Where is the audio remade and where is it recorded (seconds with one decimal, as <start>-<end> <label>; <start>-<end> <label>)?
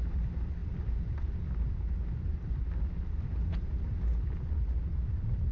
0.0-5.5 recorded